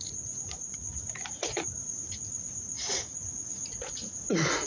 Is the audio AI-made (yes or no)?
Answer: yes